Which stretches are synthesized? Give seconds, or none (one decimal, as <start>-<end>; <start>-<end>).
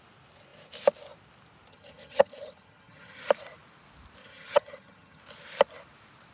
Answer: 1.7-3.2; 4.2-5.2